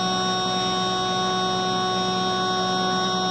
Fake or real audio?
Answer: real